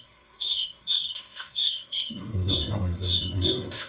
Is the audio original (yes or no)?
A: no